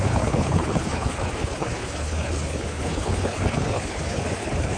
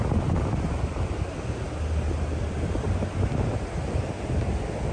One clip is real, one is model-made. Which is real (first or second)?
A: second